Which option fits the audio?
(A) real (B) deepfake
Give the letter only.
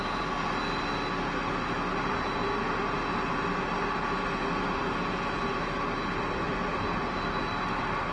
A